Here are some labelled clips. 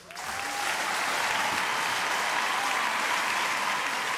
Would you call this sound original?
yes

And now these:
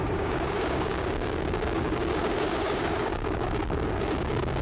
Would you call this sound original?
no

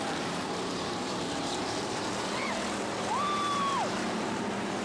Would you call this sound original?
no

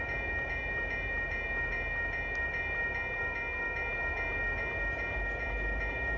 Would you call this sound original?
yes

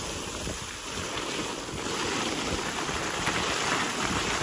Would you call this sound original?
yes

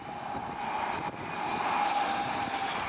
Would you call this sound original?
no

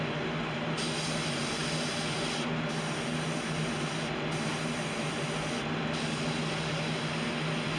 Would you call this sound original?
yes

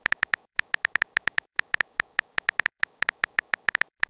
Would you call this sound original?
no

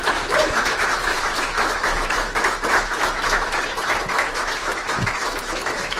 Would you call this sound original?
no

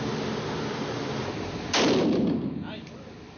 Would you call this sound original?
yes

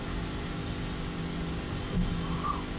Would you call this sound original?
yes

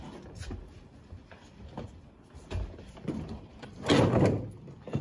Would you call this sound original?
yes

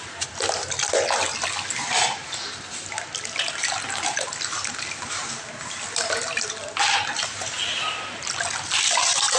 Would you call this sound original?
yes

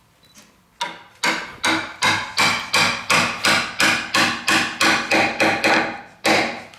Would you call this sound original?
yes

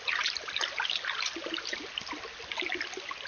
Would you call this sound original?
yes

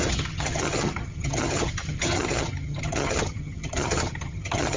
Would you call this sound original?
no